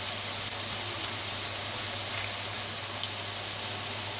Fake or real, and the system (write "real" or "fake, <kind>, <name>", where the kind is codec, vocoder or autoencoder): real